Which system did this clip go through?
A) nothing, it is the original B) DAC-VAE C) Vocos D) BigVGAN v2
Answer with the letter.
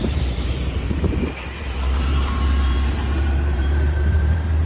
D